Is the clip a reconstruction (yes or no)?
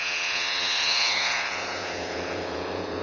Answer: yes